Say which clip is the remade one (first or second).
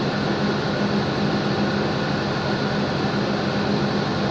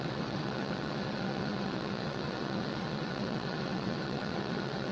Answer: second